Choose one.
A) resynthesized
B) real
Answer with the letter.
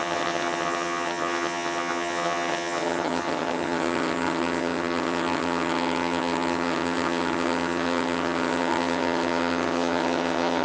A